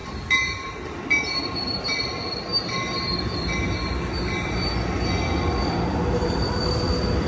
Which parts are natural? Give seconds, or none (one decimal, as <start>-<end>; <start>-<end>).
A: 0.0-7.3